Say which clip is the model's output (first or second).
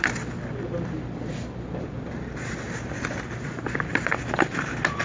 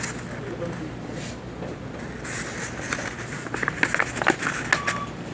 first